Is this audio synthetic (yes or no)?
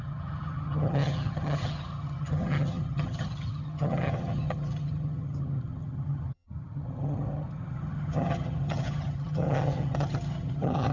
yes